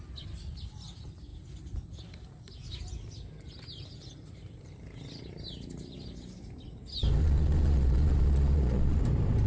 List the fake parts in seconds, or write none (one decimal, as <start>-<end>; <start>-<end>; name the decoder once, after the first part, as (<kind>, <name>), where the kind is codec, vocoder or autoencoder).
7.2-9.0 (vocoder, Vocos)